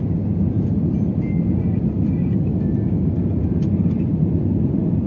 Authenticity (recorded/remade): recorded